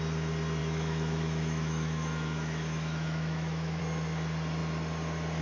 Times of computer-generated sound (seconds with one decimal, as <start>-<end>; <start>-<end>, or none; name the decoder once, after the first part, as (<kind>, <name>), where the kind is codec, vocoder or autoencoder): 0.6-3.8 (autoencoder, DAC-VAE)